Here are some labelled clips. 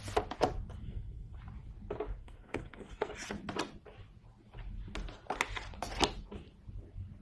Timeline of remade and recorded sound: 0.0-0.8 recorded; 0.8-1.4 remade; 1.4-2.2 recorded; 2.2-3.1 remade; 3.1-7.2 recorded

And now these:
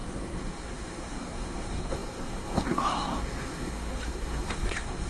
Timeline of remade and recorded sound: 0.0-5.1 remade

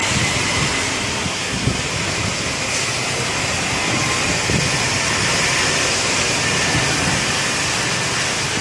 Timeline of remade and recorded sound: 0.0-1.3 recorded; 1.3-1.8 remade; 1.8-8.6 recorded

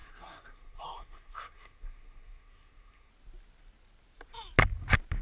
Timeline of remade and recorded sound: 0.0-3.1 remade; 3.1-5.2 recorded

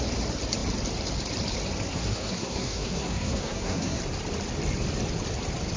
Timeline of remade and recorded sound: 0.0-1.9 recorded; 1.9-4.0 remade; 4.0-5.8 recorded

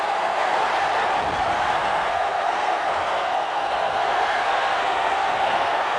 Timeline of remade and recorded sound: 0.0-0.7 remade; 0.7-1.5 recorded; 1.5-6.0 remade

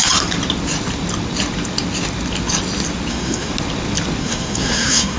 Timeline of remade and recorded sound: 0.0-3.1 recorded; 3.1-3.5 remade; 3.5-4.2 recorded; 4.2-5.2 remade

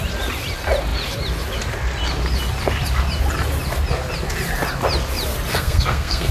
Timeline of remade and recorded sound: 0.0-5.5 recorded; 5.5-6.3 remade